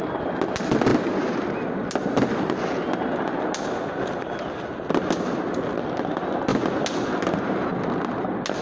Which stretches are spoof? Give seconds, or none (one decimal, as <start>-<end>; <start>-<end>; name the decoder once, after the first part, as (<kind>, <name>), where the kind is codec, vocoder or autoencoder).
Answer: none